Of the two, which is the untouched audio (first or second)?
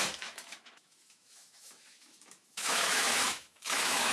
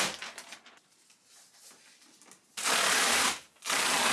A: second